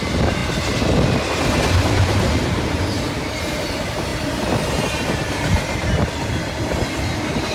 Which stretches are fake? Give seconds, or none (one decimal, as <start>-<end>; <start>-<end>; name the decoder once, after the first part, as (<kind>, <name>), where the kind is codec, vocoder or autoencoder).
0.0-0.4 (vocoder, BigVGAN v2); 3.4-7.5